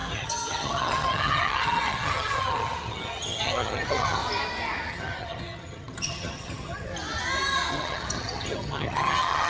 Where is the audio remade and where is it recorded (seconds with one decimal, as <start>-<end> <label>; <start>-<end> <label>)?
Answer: 0.0-4.2 remade; 4.2-4.9 recorded; 4.9-6.9 remade; 6.9-7.7 recorded; 7.7-9.5 remade